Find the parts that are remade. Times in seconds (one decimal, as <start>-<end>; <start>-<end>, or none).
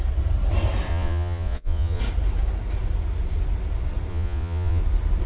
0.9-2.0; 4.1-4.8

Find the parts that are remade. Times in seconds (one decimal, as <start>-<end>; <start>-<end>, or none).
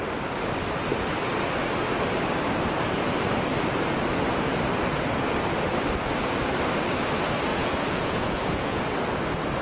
7.5-8.8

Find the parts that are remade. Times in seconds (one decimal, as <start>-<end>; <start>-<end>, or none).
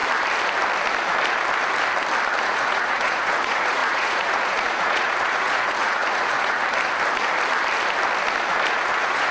2.4-6.6; 8.7-9.3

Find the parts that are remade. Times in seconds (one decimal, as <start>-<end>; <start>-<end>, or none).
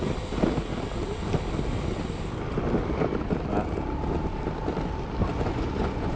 5.3-6.2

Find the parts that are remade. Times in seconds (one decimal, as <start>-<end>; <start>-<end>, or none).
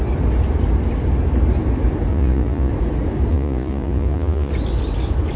2.1-2.7; 3.3-4.5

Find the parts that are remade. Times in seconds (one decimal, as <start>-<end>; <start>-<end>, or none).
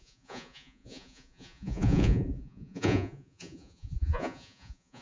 0.0-5.0